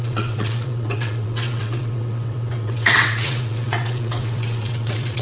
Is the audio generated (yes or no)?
yes